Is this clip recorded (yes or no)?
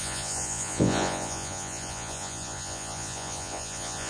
no